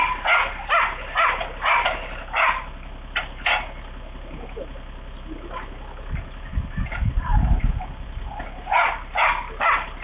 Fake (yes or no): no